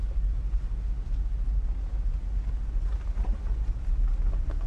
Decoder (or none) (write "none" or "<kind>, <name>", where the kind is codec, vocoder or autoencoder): none